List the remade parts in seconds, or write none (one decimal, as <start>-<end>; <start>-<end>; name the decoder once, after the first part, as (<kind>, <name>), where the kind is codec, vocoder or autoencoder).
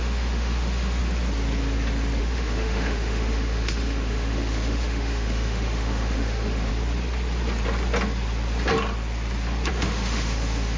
0.0-1.0 (autoencoder, DAC-VAE); 2.2-6.7; 9.7-10.8